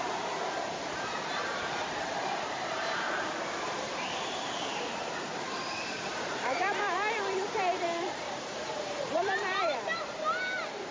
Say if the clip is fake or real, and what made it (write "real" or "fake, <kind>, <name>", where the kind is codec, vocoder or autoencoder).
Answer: fake, vocoder, BigVGAN v2